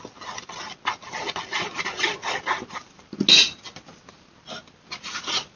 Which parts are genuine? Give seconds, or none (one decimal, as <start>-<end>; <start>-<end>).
0.0-5.6

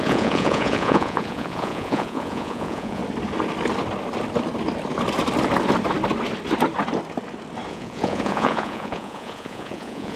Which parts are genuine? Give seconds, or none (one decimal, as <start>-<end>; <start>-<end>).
3.0-7.7

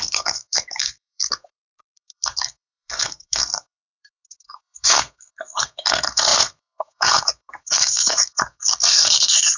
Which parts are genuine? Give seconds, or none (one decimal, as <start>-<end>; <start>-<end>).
none